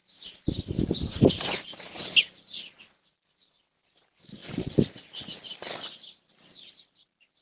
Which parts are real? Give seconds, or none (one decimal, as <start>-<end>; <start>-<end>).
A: 0.0-7.4